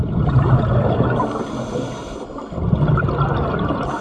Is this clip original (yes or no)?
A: yes